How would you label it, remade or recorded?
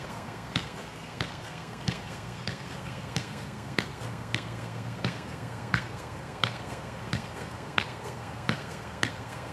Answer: remade